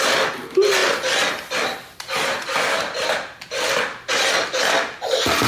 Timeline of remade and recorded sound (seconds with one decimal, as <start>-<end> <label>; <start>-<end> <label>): 0.0-5.5 recorded

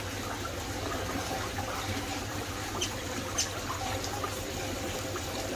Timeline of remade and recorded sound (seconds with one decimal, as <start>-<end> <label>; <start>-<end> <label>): 0.0-2.1 recorded; 2.1-5.6 remade

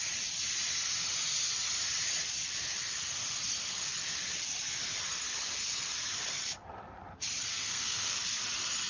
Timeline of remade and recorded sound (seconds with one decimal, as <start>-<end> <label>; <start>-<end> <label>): 0.0-7.5 recorded; 7.5-8.2 remade; 8.2-8.9 recorded

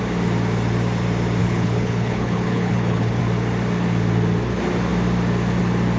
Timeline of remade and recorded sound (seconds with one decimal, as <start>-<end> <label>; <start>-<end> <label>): 0.0-1.4 recorded; 1.4-3.2 remade; 3.2-6.0 recorded

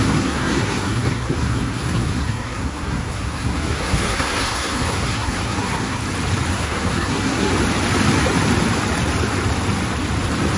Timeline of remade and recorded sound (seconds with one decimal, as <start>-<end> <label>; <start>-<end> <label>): 0.0-6.0 remade; 6.0-6.5 recorded; 6.5-7.5 remade; 7.5-10.6 recorded

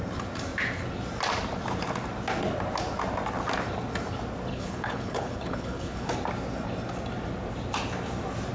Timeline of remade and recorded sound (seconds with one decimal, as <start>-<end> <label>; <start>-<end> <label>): 0.0-4.5 recorded; 4.5-6.1 remade; 6.1-8.5 recorded

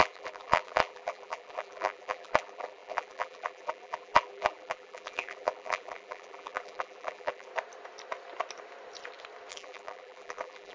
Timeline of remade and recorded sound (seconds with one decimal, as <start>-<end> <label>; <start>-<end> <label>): 0.0-7.5 remade; 7.5-9.5 recorded; 9.5-10.7 remade